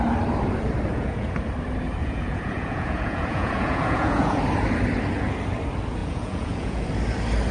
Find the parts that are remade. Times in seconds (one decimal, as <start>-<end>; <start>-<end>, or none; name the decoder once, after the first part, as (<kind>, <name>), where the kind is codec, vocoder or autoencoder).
0.9-1.4 (vocoder, Vocos); 2.0-4.4; 6.0-6.8